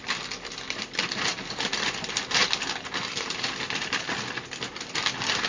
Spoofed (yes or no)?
no